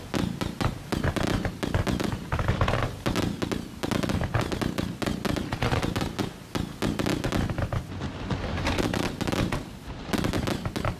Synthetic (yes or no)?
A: no